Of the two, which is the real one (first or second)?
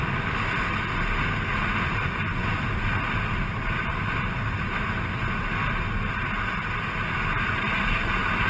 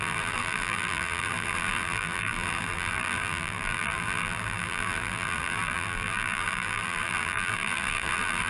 first